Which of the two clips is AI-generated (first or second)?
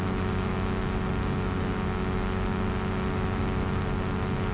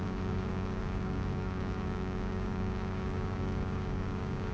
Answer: second